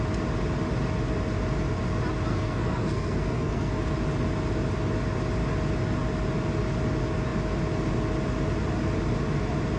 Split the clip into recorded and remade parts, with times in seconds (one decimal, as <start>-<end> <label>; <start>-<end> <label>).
0.0-2.3 recorded; 2.3-3.7 remade; 3.7-9.8 recorded